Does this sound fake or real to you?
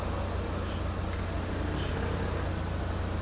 real